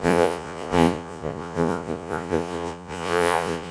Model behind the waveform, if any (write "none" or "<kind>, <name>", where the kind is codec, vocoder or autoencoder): vocoder, Vocos